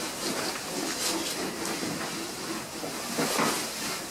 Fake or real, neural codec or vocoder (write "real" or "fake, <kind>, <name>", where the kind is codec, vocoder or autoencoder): real